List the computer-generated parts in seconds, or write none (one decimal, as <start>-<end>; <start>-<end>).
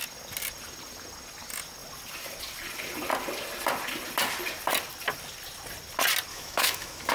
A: 6.3-7.1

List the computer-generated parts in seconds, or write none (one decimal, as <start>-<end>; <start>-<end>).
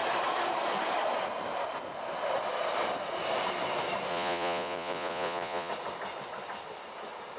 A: 4.1-5.7